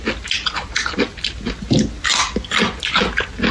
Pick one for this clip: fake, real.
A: real